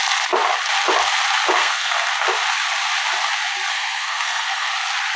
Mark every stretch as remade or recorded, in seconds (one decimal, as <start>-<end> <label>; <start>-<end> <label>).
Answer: 0.0-1.6 recorded; 1.6-2.1 remade; 2.1-3.7 recorded; 3.7-4.7 remade; 4.7-5.2 recorded